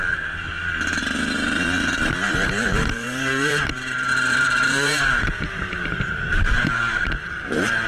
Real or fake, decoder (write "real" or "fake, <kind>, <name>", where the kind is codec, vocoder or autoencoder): fake, vocoder, BigVGAN v2